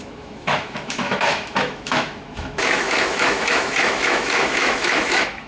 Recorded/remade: remade